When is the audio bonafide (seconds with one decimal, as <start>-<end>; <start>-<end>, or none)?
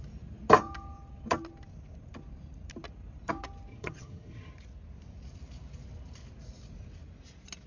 0.0-3.7; 4.5-7.7